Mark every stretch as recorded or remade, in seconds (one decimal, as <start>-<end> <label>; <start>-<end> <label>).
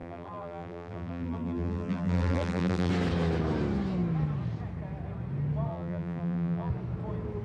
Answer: 0.0-2.9 remade; 2.9-5.7 recorded; 5.7-6.7 remade; 6.7-7.4 recorded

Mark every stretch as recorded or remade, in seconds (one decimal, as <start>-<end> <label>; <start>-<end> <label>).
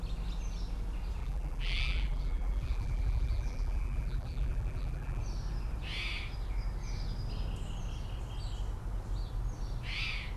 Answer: 0.0-1.2 recorded; 1.2-5.2 remade; 5.2-10.4 recorded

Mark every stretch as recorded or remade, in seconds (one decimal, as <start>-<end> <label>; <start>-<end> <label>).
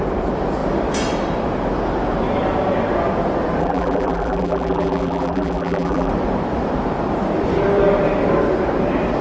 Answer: 0.0-3.6 recorded; 3.6-6.1 remade; 6.1-9.2 recorded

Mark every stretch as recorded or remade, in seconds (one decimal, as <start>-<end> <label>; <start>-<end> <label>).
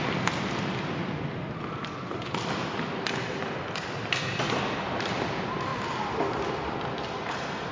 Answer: 0.0-7.7 recorded